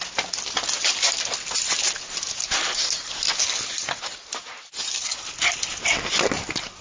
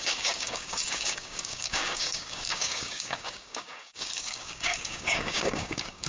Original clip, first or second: first